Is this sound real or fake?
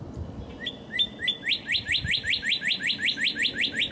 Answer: real